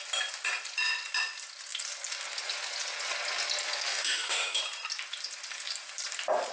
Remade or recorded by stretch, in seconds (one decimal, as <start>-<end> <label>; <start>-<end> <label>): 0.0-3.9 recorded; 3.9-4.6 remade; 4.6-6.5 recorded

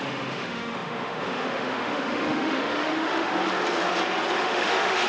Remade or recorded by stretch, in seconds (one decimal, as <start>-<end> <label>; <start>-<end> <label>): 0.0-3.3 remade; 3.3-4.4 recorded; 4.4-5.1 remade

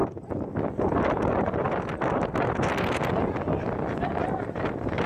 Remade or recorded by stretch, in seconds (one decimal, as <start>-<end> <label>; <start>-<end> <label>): 0.0-5.1 recorded

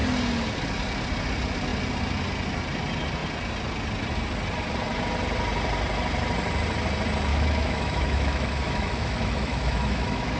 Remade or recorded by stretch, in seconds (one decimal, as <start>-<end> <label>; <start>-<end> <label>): 0.0-7.3 recorded; 7.3-10.4 remade

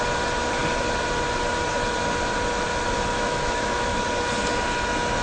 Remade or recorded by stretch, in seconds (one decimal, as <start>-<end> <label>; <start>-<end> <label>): 0.0-3.1 recorded; 3.1-4.0 remade; 4.0-5.2 recorded